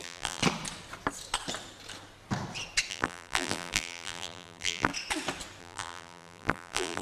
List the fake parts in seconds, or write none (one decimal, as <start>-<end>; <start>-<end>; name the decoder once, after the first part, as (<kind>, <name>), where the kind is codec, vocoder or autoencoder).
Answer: 0.0-0.4 (vocoder, BigVGAN v2); 2.9-4.9; 5.6-7.0